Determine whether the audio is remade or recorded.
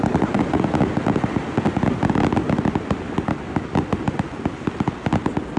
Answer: recorded